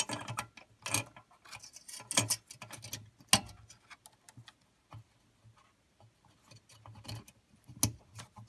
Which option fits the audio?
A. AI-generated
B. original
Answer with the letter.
B